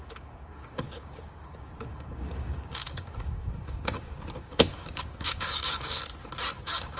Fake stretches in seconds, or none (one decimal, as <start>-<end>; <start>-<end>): 0.0-6.0; 6.6-7.0